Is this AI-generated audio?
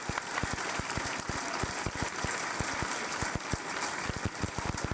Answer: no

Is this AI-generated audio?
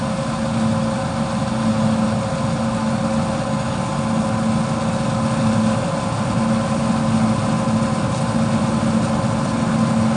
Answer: no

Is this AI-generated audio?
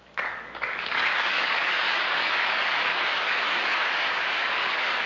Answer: yes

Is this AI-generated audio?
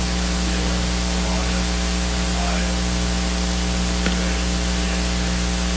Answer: no